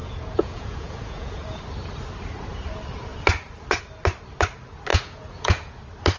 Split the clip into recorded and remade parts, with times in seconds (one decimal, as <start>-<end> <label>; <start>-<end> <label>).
0.0-1.6 remade; 1.6-4.9 recorded; 4.9-5.8 remade; 5.8-6.2 recorded